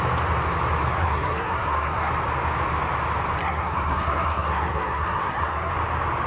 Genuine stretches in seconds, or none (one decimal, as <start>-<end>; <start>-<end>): 0.0-1.0; 2.1-3.4; 5.7-6.3